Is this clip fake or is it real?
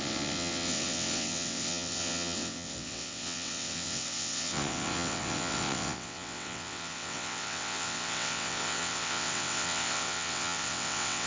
fake